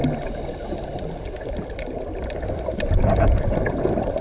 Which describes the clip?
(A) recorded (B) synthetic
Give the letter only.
A